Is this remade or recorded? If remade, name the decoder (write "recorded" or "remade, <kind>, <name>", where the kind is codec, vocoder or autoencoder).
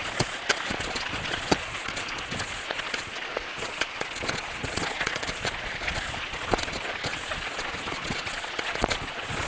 remade, vocoder, Vocos